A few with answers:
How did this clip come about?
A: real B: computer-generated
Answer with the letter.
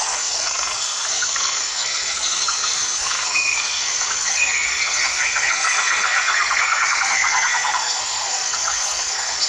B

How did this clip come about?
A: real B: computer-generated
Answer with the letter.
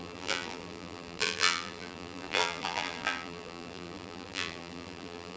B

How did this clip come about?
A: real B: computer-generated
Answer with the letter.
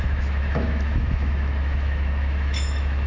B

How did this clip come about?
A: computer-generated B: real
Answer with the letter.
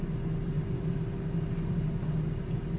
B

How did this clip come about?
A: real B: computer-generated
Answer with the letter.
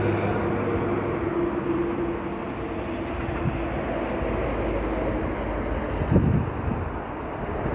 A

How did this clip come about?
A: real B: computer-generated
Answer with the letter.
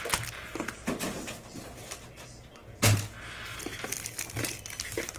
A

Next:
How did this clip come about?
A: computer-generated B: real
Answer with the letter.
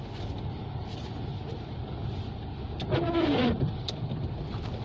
B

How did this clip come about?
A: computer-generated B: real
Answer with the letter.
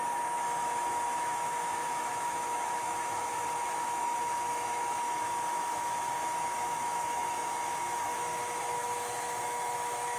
A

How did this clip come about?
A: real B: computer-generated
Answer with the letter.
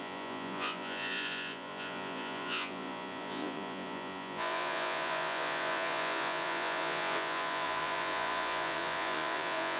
B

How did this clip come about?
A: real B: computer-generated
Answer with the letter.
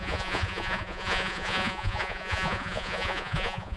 B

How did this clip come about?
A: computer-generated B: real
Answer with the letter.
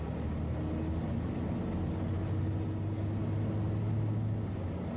B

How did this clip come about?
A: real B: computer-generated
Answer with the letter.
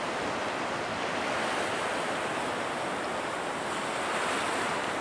A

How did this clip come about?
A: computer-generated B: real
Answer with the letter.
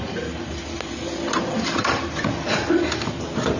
B